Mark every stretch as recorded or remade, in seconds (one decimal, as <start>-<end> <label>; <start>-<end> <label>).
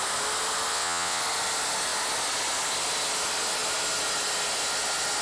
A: 0.0-0.7 recorded; 0.7-1.2 remade; 1.2-5.2 recorded